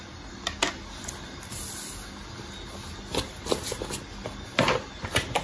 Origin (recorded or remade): recorded